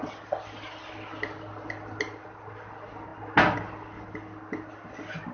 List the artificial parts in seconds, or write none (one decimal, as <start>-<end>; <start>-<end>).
none